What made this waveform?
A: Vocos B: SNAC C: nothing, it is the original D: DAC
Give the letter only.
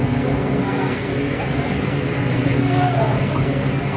B